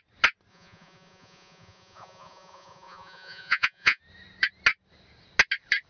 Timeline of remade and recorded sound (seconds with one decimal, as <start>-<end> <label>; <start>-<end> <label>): 0.0-0.5 recorded; 0.5-4.0 remade; 4.0-5.9 recorded

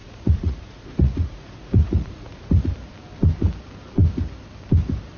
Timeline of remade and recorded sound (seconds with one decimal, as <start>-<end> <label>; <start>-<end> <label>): 0.0-2.6 remade; 2.6-5.2 recorded